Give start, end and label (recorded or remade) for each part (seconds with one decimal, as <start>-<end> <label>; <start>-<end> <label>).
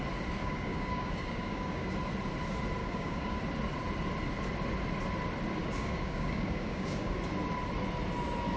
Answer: 0.0-0.4 recorded; 0.4-1.9 remade; 1.9-2.8 recorded; 2.8-3.4 remade; 3.4-5.6 recorded; 5.6-7.2 remade; 7.2-8.6 recorded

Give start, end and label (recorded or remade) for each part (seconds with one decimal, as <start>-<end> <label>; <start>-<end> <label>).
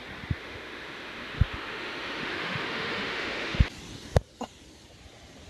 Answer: 0.0-0.4 recorded; 0.4-3.7 remade; 3.7-5.5 recorded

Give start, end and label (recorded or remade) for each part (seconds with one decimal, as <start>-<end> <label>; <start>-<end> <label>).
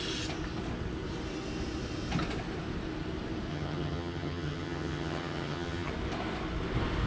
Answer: 0.0-3.5 recorded; 3.5-5.9 remade; 5.9-7.1 recorded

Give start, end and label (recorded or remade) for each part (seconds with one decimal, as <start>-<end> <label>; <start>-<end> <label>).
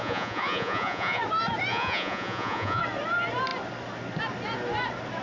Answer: 0.0-1.2 remade; 1.2-1.7 recorded; 1.7-2.8 remade; 2.8-5.2 recorded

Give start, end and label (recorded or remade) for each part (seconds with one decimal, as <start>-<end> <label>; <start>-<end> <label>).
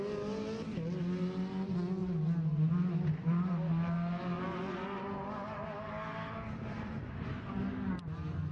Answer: 0.0-8.5 recorded